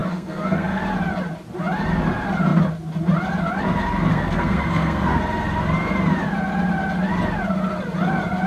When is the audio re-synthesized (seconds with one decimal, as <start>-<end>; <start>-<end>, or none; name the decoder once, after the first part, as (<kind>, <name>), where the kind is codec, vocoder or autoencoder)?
0.0-0.8 (codec, SNAC); 4.1-5.2